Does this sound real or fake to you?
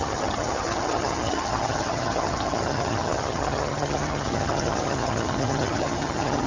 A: fake